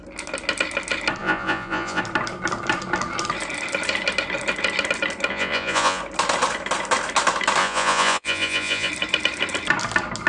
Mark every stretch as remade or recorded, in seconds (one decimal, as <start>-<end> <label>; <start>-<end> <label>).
0.0-1.2 recorded; 1.2-2.0 remade; 2.0-5.3 recorded; 5.3-6.0 remade; 6.0-7.6 recorded; 7.6-8.9 remade; 8.9-10.3 recorded